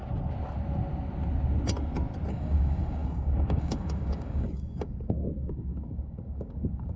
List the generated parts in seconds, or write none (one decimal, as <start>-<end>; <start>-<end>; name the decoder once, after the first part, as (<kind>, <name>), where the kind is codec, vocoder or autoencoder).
2.3-7.0 (codec, DAC)